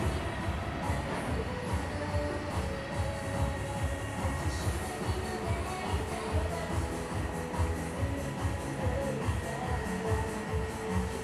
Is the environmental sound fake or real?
real